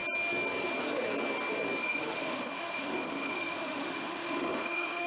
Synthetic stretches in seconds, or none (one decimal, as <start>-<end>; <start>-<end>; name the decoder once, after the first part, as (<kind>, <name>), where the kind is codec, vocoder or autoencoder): 1.8-5.1 (autoencoder, DAC-VAE)